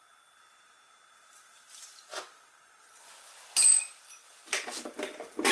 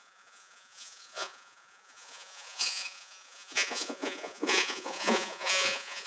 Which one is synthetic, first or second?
second